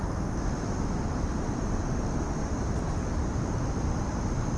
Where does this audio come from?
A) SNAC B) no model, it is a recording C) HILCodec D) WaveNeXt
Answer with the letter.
B